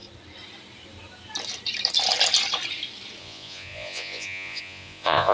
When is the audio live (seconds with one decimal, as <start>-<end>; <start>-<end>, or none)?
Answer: 0.0-3.2